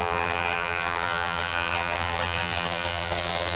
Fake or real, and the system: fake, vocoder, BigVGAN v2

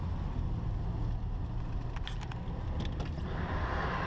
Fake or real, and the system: real